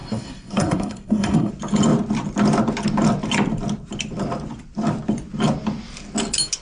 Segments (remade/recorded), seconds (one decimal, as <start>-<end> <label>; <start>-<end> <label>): 0.0-1.5 remade; 1.5-6.6 recorded